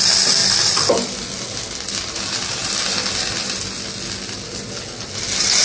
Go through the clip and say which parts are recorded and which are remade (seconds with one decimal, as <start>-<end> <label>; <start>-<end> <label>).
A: 0.0-5.6 recorded